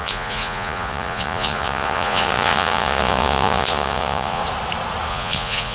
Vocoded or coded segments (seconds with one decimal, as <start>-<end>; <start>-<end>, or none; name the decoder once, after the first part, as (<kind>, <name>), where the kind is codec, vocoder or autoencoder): 0.0-4.4 (vocoder, Vocos); 5.1-5.7